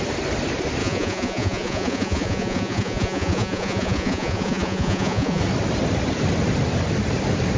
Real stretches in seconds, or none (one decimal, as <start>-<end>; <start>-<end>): 0.0-0.8; 5.4-7.6